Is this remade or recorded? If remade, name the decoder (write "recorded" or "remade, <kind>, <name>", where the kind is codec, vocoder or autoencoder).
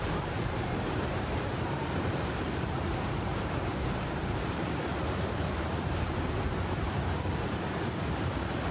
remade, vocoder, BigVGAN v2